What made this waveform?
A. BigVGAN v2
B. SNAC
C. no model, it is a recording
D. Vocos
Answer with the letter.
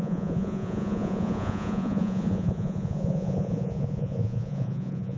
D